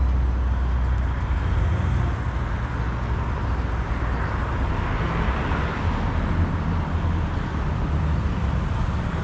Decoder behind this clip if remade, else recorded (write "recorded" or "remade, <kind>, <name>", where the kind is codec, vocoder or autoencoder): recorded